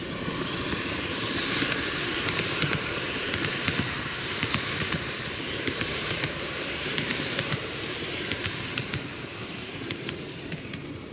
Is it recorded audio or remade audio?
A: remade